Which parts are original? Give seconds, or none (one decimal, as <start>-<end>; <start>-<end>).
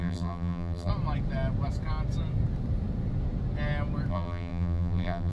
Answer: 0.9-4.1